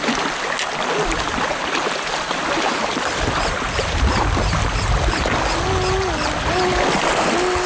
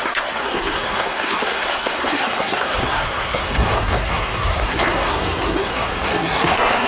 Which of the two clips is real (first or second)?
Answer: first